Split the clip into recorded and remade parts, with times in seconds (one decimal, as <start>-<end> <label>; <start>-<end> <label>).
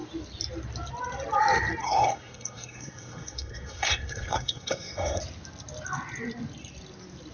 0.0-1.8 recorded; 1.8-5.2 remade; 5.2-7.3 recorded